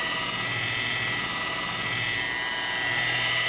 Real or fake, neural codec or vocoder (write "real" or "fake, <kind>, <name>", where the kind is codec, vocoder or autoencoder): real